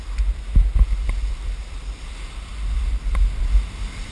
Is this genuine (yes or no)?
yes